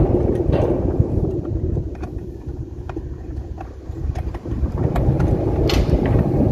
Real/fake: fake